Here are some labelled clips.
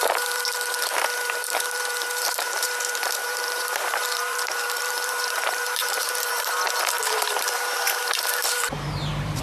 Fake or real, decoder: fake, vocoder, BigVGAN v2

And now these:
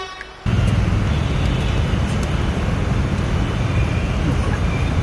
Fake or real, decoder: real